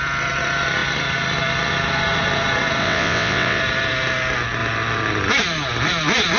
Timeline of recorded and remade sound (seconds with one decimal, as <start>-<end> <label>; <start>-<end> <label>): 0.0-2.8 recorded; 2.8-3.6 remade; 3.6-6.4 recorded